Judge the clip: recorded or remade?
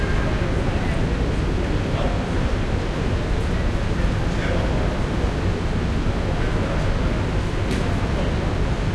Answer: recorded